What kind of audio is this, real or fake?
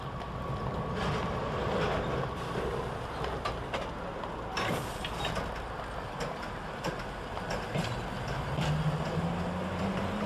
real